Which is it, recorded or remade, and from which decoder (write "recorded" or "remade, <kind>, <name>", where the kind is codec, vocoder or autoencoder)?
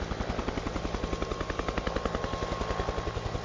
recorded